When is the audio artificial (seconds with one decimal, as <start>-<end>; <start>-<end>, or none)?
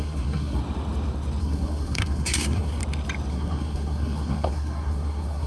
0.0-0.6; 1.4-2.8; 3.3-5.5